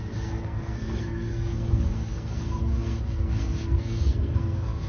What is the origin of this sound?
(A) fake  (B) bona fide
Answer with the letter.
A